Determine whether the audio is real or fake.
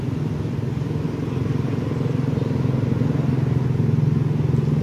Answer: real